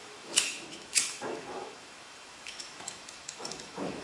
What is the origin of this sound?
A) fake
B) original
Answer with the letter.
A